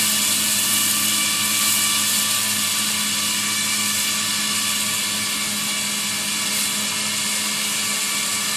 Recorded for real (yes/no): yes